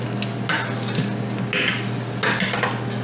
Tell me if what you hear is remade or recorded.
recorded